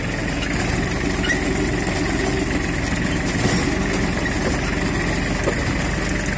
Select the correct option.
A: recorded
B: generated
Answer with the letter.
A